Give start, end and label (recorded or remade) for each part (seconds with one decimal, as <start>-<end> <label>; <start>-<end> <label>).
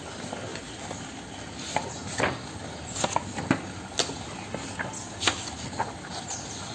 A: 0.0-6.7 recorded